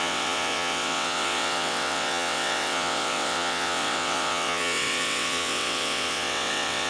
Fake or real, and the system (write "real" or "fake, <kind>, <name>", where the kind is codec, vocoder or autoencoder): fake, vocoder, WaveNeXt